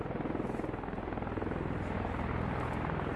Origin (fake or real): real